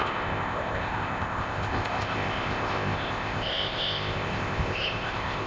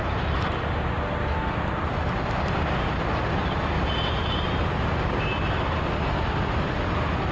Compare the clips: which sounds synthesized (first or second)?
first